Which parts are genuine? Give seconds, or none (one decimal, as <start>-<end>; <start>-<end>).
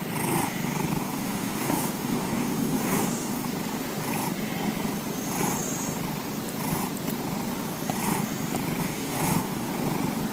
0.0-1.0; 3.5-8.8; 9.7-10.3